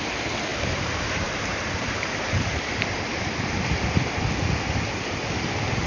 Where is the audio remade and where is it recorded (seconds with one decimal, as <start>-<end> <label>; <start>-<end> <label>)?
0.0-0.5 recorded; 0.5-3.3 remade; 3.3-5.9 recorded